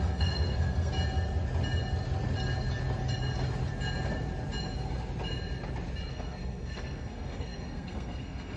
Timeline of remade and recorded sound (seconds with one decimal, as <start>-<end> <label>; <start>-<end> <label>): 0.0-0.9 remade; 0.9-6.1 recorded; 6.1-8.6 remade